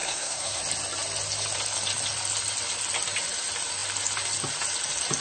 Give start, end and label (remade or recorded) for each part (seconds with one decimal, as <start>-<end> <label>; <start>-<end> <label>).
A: 0.0-0.6 remade; 0.6-5.2 recorded